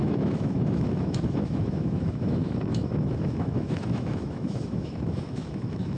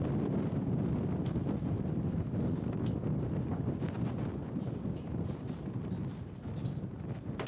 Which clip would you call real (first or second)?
second